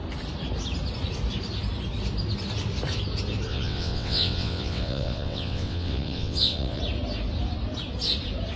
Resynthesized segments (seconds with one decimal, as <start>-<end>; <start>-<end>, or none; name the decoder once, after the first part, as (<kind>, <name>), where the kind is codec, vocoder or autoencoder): 3.5-6.8 (vocoder, WaveNeXt)